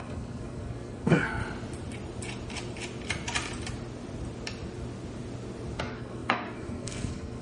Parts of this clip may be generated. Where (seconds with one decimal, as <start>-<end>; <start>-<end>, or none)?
0.0-1.4; 5.8-7.4